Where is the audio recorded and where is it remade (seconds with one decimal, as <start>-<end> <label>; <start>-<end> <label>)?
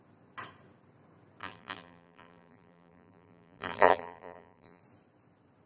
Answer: 0.0-1.4 recorded; 1.4-4.8 remade; 4.8-5.7 recorded